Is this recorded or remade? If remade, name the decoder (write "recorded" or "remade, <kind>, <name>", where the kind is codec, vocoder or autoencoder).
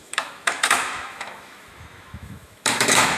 remade, autoencoder, DAC-VAE